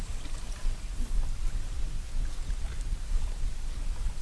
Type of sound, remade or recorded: recorded